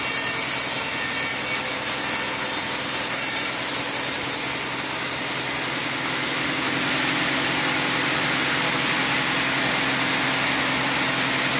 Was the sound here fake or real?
real